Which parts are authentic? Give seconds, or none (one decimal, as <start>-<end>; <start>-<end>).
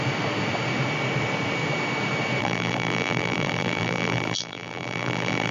0.0-2.4